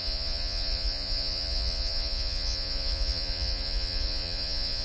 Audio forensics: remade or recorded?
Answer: remade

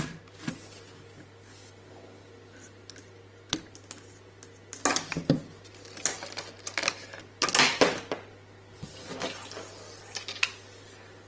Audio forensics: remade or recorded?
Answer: recorded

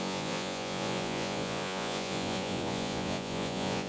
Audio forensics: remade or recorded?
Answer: remade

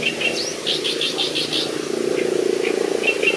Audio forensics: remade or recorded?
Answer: recorded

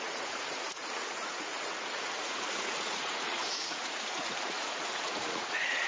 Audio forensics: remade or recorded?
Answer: remade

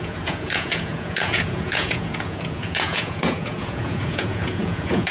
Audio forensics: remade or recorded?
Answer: remade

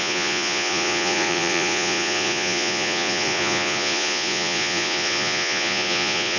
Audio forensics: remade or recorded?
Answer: remade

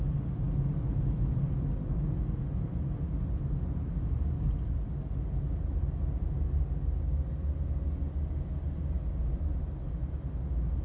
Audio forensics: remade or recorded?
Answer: recorded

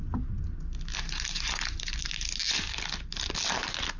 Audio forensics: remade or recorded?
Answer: recorded